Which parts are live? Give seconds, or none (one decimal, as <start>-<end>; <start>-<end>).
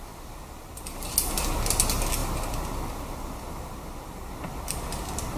0.0-5.4